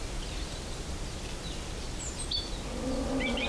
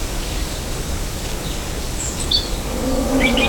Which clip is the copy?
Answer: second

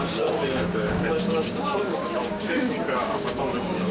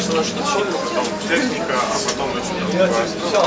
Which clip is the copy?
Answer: first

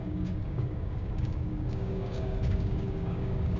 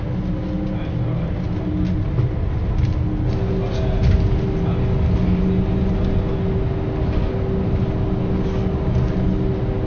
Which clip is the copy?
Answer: first